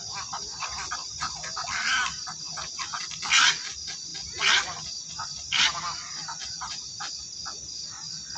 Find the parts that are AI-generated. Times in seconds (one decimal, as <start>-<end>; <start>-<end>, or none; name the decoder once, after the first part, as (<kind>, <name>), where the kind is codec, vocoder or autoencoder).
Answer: none